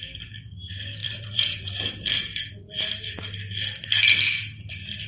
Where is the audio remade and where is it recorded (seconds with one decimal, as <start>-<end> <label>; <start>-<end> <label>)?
0.0-1.0 recorded; 1.0-2.2 remade; 2.2-5.1 recorded